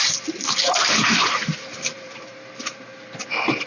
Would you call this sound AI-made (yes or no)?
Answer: yes